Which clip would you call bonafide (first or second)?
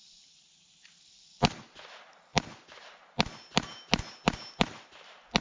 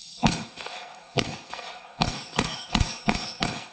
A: first